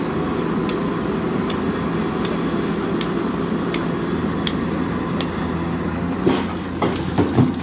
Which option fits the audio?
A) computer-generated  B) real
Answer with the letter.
B